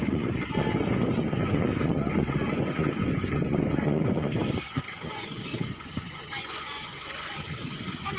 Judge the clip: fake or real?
fake